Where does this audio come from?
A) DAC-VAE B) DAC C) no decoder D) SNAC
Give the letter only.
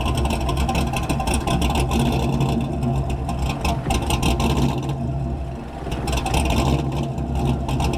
C